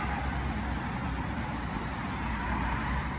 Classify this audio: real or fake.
real